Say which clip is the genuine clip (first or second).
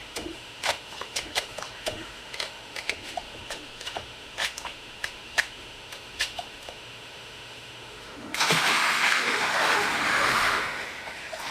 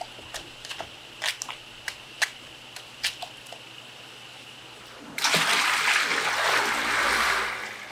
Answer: second